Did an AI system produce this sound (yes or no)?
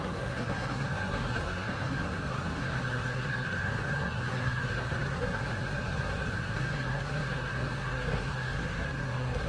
yes